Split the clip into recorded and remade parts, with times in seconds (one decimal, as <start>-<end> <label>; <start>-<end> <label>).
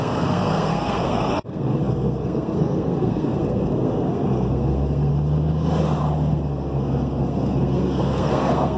0.0-5.1 remade; 5.1-6.3 recorded; 6.3-8.8 remade